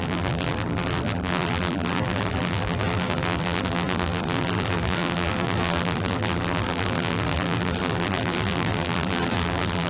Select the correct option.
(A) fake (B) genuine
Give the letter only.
A